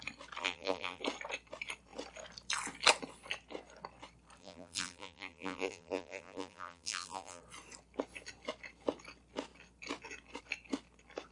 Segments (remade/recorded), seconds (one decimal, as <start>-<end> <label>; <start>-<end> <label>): 0.0-0.4 recorded; 0.4-1.0 remade; 1.0-4.4 recorded; 4.4-7.4 remade; 7.4-11.3 recorded